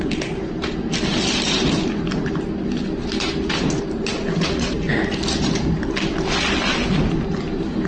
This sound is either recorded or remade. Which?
recorded